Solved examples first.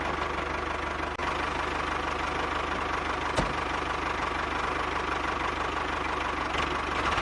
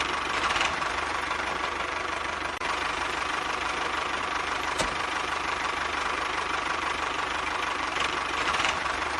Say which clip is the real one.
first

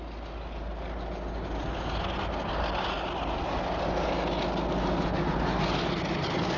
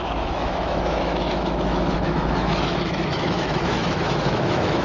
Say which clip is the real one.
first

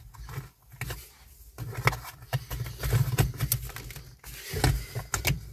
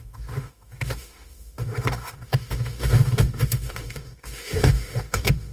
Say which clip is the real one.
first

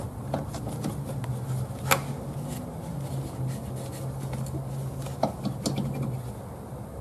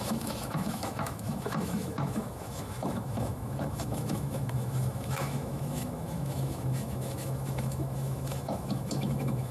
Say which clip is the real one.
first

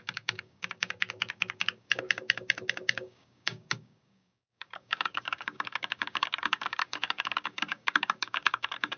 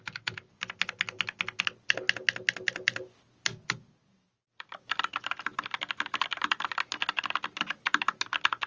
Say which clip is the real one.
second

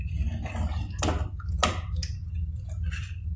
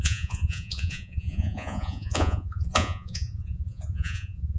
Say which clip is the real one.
first